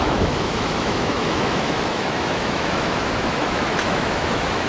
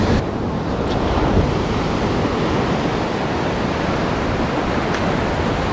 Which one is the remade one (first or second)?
first